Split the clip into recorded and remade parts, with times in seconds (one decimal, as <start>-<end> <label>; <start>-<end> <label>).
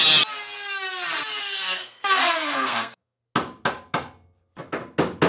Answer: 0.0-1.4 recorded; 1.4-3.2 remade; 3.2-5.3 recorded